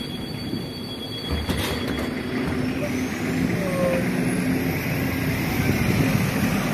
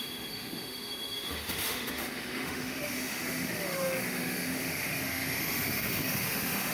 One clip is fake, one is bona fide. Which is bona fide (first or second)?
first